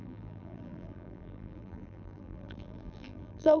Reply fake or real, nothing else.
fake